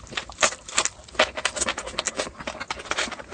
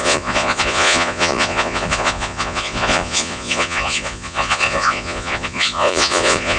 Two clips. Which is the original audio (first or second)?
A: first